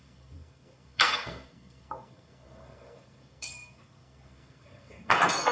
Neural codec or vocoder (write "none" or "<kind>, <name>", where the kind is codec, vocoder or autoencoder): codec, SNAC